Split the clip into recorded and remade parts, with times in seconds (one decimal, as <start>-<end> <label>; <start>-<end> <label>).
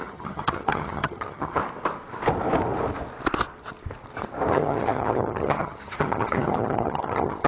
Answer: 0.0-1.6 remade; 1.6-4.5 recorded; 4.5-7.5 remade